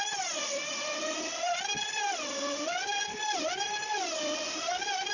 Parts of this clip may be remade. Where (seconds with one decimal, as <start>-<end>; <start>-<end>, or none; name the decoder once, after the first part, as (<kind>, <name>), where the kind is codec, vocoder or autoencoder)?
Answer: none